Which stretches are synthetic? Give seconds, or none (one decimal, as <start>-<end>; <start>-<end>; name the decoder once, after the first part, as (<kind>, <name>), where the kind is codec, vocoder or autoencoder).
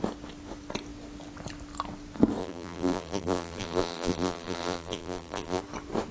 2.4-5.6 (vocoder, BigVGAN v2)